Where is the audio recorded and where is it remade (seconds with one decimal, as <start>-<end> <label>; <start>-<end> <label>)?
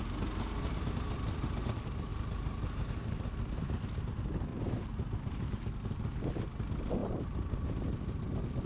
0.0-2.1 recorded; 2.1-3.3 remade; 3.3-4.5 recorded; 4.5-5.5 remade; 5.5-7.0 recorded; 7.0-7.9 remade; 7.9-8.7 recorded